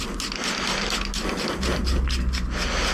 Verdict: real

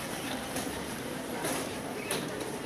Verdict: fake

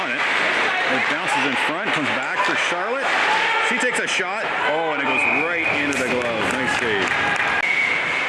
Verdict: real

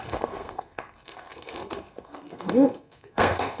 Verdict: fake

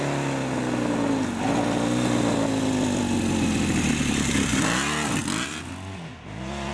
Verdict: real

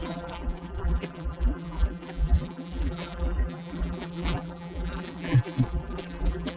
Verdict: fake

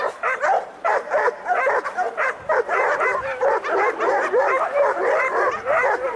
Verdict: fake